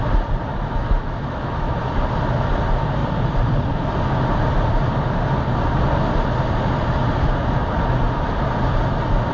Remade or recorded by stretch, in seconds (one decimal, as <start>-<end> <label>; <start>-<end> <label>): 0.0-0.5 recorded; 0.5-1.9 remade; 1.9-9.3 recorded